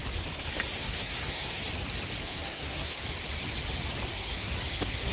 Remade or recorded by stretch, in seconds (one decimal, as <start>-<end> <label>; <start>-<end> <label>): 0.0-0.8 recorded; 0.8-1.6 remade; 1.6-2.2 recorded; 2.2-3.0 remade; 3.0-4.1 recorded; 4.1-5.1 remade